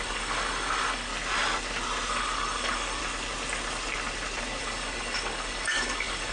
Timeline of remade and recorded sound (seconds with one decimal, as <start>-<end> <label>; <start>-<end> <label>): 0.0-1.1 remade; 1.1-2.1 recorded; 2.1-3.0 remade; 3.0-4.6 recorded; 4.6-6.3 remade